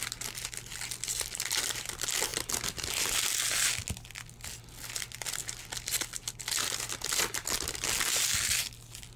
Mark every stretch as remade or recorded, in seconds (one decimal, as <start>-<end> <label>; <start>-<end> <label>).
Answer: 0.0-9.2 recorded